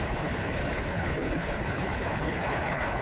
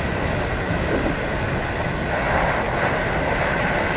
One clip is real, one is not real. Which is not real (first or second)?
first